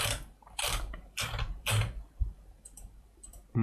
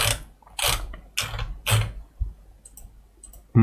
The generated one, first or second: first